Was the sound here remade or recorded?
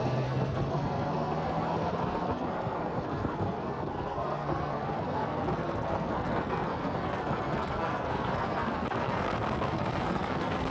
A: remade